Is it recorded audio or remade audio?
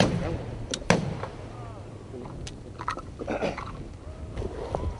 recorded